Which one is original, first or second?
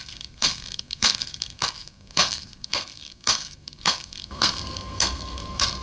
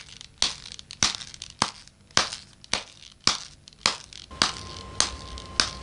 second